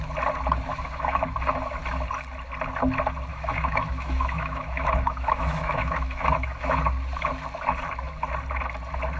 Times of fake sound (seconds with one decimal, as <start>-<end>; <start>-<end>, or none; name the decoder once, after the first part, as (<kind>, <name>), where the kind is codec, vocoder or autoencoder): 0.7-1.3 (autoencoder, DAC-VAE); 3.3-6.8